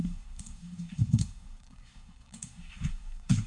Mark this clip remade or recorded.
remade